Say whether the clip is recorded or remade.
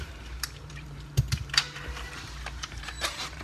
remade